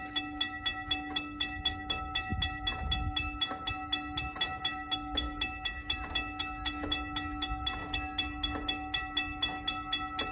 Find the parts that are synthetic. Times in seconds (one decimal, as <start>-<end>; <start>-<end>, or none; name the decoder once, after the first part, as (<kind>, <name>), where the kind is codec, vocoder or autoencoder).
none